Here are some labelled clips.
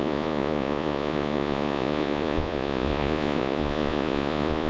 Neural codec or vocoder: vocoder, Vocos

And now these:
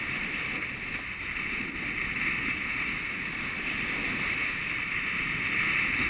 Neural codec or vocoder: none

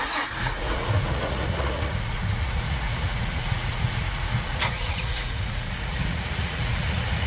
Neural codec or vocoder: vocoder, Vocos